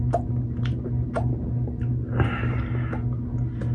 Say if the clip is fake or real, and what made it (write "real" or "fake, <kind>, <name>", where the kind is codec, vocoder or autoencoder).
real